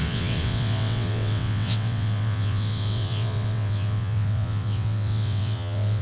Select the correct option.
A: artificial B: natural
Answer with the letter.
A